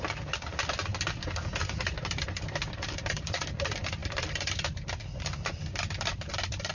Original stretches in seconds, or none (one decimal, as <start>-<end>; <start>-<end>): 0.0-6.7